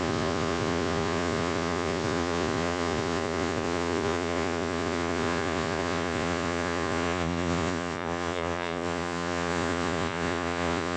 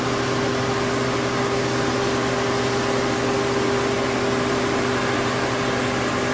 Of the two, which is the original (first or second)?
second